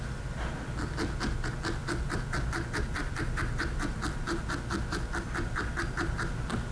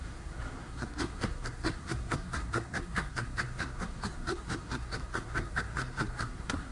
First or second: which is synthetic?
second